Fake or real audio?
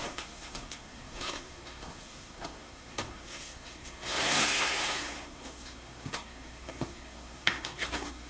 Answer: fake